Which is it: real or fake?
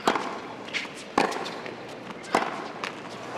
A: real